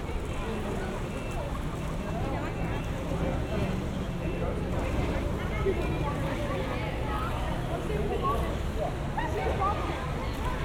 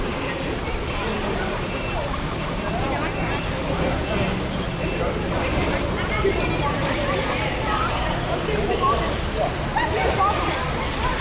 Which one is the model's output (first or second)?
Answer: second